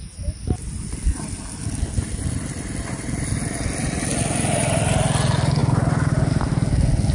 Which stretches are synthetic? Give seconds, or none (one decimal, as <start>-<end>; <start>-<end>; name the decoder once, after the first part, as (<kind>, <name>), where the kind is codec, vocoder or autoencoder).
none